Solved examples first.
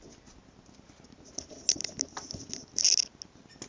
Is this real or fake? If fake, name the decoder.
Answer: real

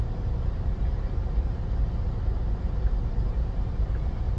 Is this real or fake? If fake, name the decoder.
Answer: fake, vocoder, BigVGAN v2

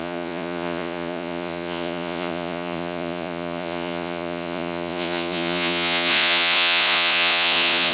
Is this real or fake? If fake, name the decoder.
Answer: fake, vocoder, Vocos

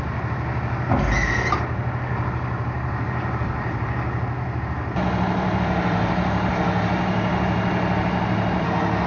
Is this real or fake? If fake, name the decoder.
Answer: real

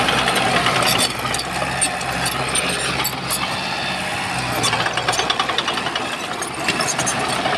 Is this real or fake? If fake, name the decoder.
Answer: real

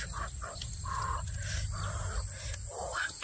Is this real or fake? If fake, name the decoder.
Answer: real